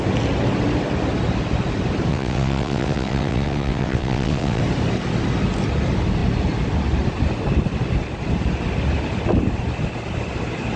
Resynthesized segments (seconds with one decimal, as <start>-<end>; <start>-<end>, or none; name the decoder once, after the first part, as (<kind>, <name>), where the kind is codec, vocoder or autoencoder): 2.1-4.6 (vocoder, WaveNeXt)